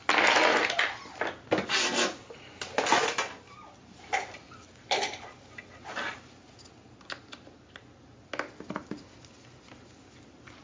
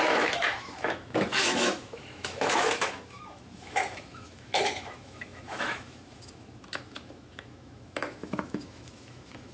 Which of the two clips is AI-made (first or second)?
second